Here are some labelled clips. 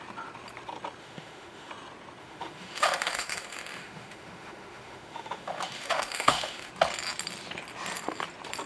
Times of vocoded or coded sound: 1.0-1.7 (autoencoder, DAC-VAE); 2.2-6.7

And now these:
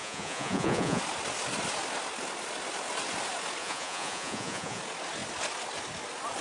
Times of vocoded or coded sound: 0.0-1.0 (vocoder, Vocos); 3.6-4.8